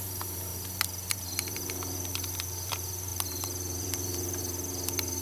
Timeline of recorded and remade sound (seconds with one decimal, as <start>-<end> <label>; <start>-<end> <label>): 0.0-5.2 remade